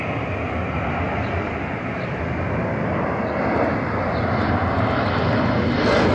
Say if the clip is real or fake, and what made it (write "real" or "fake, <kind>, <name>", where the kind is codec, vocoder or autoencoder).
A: real